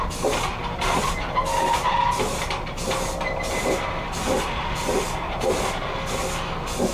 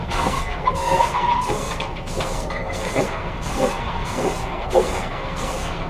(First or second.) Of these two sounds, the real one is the first